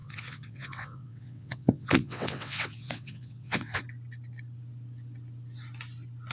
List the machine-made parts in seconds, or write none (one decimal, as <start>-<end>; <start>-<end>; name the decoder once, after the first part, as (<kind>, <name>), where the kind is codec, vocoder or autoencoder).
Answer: 0.0-3.8 (vocoder, WaveNeXt)